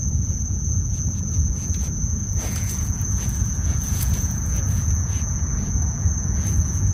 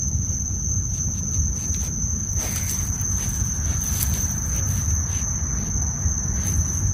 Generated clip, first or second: first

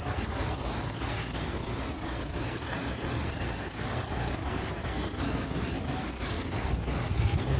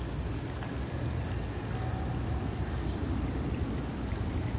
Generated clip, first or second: first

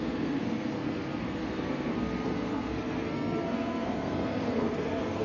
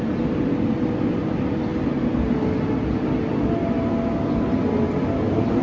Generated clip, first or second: first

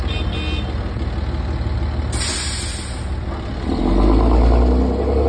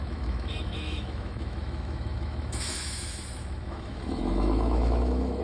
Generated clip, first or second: second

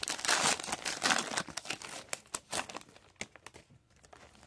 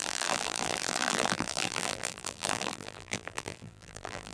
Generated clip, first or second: second